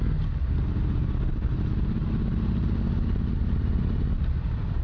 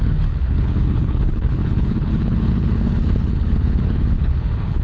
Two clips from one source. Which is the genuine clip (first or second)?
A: first